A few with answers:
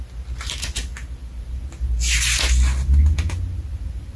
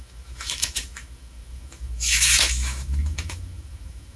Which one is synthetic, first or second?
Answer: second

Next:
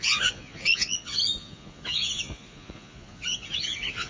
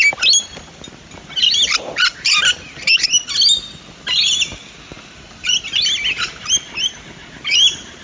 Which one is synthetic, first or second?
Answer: first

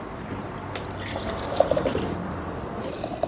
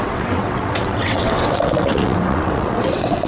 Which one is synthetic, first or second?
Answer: second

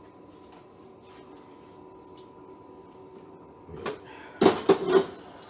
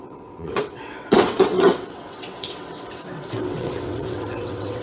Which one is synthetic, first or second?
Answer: second